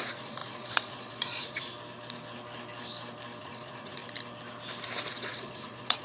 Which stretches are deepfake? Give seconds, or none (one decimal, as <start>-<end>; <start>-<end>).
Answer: 0.0-1.7; 3.4-4.0; 5.1-6.0